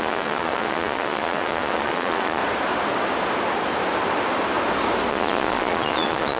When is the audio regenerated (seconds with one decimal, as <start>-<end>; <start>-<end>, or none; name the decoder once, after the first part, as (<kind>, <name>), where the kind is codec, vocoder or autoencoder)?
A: 0.0-2.4 (vocoder, Vocos); 5.1-6.4